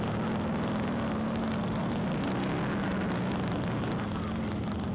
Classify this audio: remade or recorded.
recorded